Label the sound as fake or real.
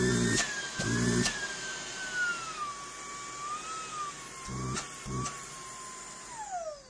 real